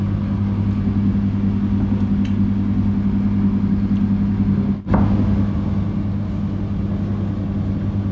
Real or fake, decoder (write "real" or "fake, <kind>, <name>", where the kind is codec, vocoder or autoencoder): real